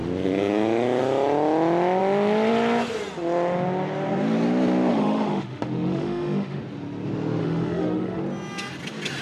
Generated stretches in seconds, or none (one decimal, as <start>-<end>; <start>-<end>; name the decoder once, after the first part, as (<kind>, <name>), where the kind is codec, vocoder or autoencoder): 4.9-6.6 (autoencoder, DAC-VAE); 7.4-8.2